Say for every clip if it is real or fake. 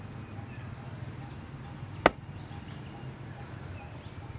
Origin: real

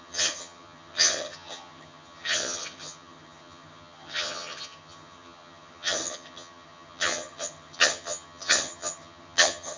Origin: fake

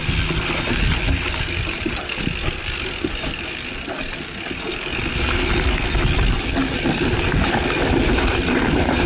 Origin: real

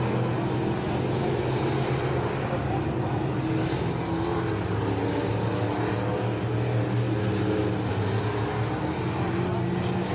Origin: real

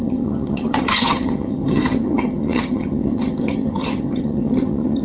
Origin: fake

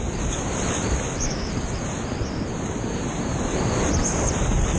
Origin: real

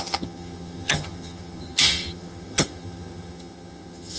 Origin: fake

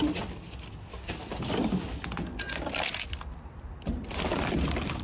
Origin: real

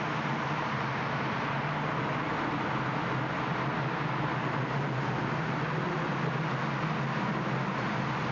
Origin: real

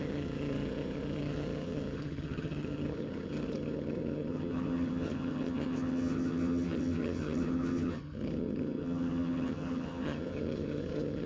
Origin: fake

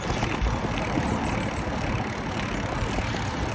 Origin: real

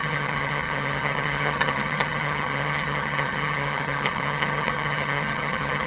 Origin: fake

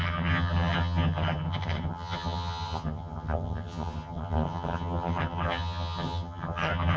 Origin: fake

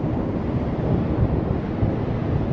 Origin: real